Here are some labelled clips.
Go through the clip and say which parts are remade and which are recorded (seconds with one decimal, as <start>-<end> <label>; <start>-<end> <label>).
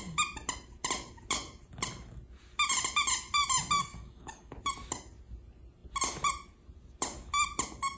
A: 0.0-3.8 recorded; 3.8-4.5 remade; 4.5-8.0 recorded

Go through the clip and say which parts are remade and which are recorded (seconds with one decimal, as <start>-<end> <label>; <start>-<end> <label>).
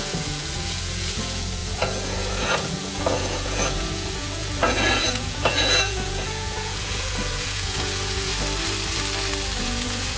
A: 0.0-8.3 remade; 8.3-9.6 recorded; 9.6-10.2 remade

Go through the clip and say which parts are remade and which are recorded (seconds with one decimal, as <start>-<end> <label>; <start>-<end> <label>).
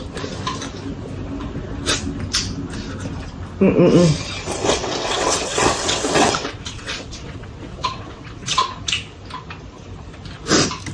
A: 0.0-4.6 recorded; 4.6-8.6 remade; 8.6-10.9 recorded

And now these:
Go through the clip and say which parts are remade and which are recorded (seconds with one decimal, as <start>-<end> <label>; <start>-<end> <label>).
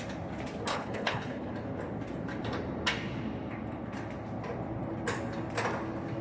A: 0.0-0.7 recorded; 0.7-1.5 remade; 1.5-6.2 recorded